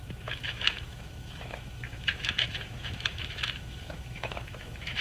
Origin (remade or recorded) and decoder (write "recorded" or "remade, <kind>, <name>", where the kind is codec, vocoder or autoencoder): remade, autoencoder, DAC-VAE